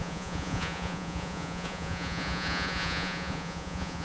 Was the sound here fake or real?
fake